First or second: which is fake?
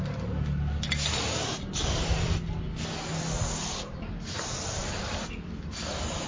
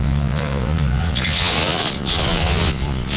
second